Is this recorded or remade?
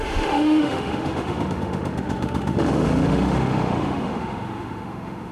remade